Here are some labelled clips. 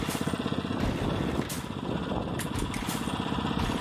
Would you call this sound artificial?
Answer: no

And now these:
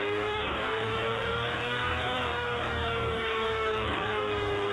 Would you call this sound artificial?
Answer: yes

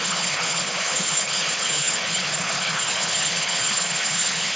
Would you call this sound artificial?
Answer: yes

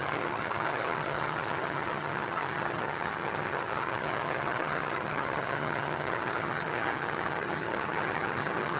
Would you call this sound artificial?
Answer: yes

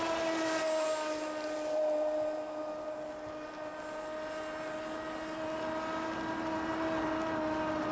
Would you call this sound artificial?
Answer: no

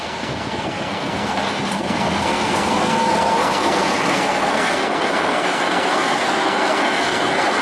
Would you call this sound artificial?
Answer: yes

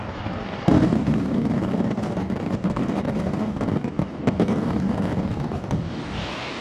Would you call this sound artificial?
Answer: yes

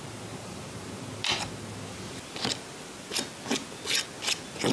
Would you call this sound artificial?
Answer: no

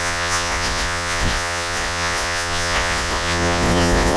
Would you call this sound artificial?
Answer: yes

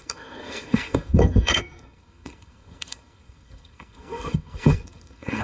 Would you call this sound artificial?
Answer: yes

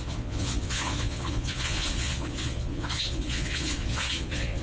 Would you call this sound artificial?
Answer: yes